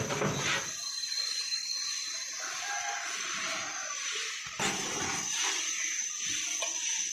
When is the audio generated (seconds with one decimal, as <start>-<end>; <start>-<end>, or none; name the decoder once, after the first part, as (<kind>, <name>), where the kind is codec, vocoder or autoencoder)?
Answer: none